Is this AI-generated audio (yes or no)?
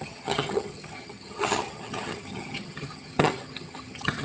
yes